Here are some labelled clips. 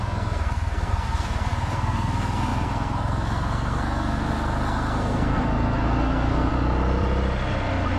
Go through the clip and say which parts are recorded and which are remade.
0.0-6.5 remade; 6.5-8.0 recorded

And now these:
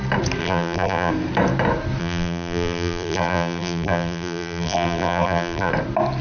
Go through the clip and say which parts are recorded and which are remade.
0.0-0.4 recorded; 0.4-1.1 remade; 1.1-2.0 recorded; 2.0-5.7 remade; 5.7-6.2 recorded

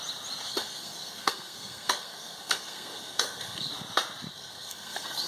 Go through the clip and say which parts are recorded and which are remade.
0.0-0.5 recorded; 0.5-3.7 remade; 3.7-4.3 recorded; 4.3-5.3 remade

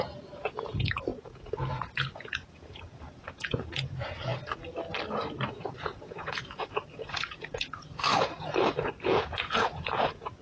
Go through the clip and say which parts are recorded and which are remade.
0.0-4.3 remade; 4.3-5.5 recorded; 5.5-10.4 remade

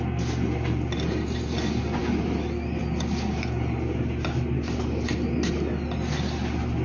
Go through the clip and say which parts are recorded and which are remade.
0.0-6.8 recorded